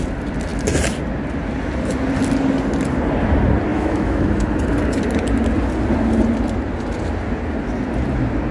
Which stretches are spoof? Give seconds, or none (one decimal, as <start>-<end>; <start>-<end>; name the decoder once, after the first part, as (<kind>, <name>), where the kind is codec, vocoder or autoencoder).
3.7-4.5 (autoencoder, DAC-VAE)